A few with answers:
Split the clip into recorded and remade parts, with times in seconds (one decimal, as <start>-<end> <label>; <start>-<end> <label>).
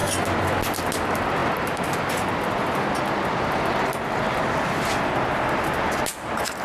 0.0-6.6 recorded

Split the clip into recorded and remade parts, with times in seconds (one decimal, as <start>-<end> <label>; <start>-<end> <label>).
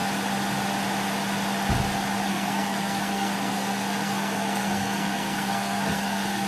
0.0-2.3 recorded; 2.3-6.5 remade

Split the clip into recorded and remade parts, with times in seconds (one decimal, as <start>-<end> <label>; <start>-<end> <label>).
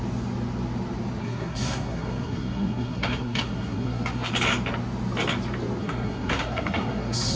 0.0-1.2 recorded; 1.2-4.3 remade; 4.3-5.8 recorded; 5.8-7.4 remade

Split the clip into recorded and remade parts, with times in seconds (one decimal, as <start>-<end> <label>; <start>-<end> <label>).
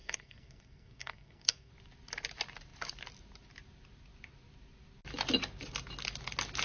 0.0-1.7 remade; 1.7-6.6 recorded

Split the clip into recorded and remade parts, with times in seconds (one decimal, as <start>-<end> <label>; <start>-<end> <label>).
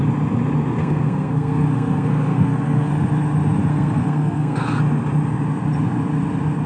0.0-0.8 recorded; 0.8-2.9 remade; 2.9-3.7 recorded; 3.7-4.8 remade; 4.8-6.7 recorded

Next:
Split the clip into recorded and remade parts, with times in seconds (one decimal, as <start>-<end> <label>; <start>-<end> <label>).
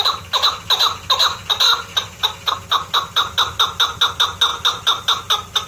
0.0-5.7 recorded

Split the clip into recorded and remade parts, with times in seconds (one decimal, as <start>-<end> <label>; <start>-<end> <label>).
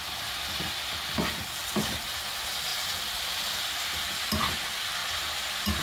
0.0-5.8 recorded